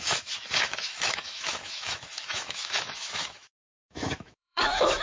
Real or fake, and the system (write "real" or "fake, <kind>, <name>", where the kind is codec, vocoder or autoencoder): fake, autoencoder, DAC-VAE